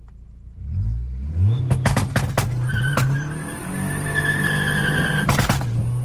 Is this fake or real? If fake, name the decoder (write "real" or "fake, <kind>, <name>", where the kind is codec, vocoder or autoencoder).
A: real